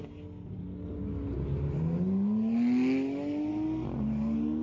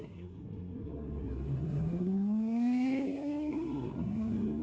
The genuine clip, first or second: first